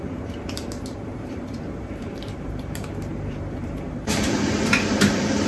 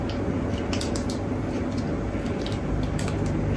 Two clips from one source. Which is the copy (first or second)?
first